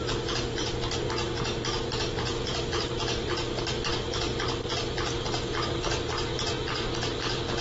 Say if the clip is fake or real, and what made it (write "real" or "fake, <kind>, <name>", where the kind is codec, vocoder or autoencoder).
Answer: real